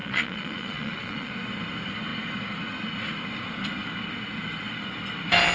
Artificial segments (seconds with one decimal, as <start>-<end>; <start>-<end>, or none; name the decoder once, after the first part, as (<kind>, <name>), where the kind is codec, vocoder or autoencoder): 0.0-1.3 (vocoder, Vocos)